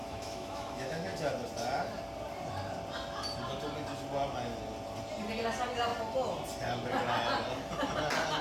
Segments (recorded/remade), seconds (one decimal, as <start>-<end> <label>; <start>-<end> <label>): 0.0-1.3 remade; 1.3-8.4 recorded

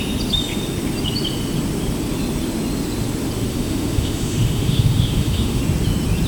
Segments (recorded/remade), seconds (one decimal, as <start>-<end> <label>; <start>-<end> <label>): 0.0-3.5 recorded; 3.5-5.6 remade; 5.6-6.3 recorded